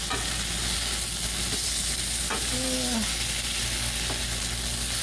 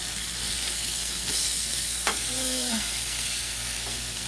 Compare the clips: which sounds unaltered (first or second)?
first